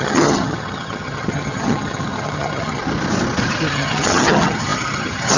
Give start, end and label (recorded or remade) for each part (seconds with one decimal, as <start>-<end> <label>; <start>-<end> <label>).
0.0-2.8 remade; 2.8-3.7 recorded; 3.7-5.4 remade